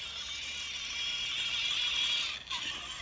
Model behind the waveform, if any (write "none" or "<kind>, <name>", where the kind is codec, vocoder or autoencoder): none